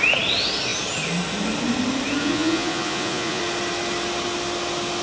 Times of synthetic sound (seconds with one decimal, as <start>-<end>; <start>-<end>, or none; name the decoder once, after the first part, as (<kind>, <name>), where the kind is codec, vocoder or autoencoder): 2.2-3.4 (vocoder, Vocos)